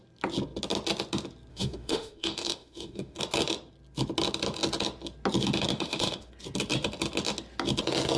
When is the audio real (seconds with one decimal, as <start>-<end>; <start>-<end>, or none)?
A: 0.0-1.5; 3.2-5.7; 6.3-8.2